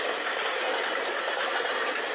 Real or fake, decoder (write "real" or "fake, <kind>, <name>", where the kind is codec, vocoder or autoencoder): real